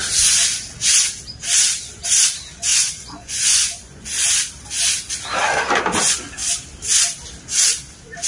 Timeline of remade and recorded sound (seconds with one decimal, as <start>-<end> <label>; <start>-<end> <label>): 0.0-2.7 recorded; 2.7-4.1 remade; 4.1-8.3 recorded